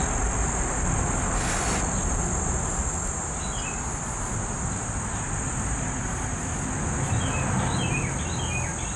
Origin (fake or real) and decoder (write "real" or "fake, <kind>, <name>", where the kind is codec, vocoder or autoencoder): real